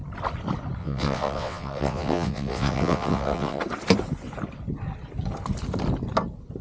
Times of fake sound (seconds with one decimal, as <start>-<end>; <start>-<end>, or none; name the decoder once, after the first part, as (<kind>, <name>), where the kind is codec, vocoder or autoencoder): 0.8-3.6 (vocoder, WaveNeXt)